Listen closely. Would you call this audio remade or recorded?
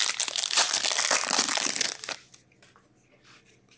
recorded